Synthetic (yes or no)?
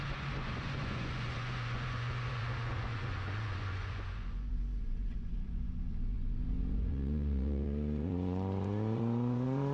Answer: yes